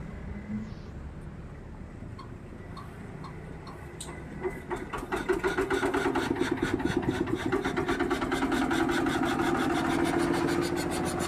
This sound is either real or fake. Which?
real